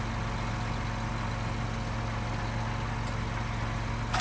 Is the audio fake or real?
real